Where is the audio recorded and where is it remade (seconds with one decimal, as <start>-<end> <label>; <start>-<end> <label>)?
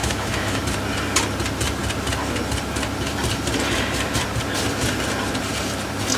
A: 0.0-0.6 remade; 0.6-6.2 recorded